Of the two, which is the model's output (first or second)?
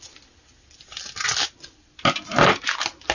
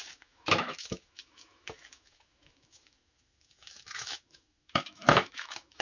second